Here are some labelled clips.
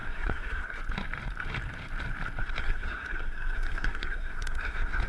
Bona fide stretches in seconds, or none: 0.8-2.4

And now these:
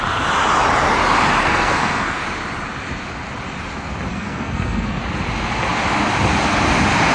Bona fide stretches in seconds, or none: 0.0-1.4; 2.2-4.1; 5.0-7.1